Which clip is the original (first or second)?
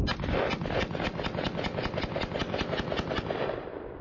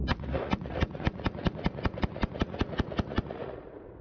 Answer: first